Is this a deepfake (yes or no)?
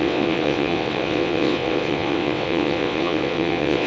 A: yes